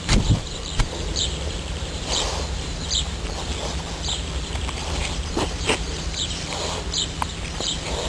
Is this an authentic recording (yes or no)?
no